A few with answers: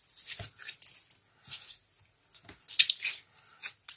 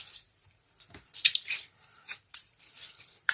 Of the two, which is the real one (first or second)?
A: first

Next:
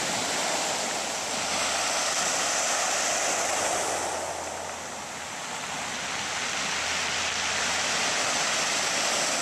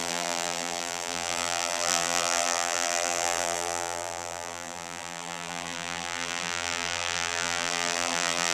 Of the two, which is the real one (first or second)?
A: first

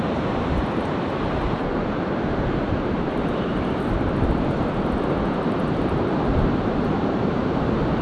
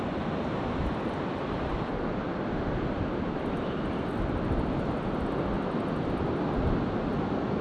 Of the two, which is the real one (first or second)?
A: second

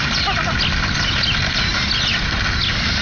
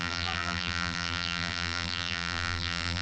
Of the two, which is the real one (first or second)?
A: first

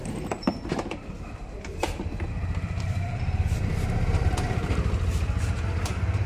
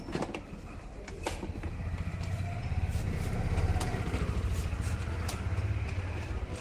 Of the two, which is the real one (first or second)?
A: second